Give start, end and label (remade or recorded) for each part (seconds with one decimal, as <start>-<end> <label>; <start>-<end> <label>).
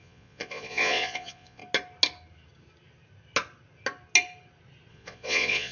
0.0-1.6 remade; 1.6-4.9 recorded; 4.9-5.7 remade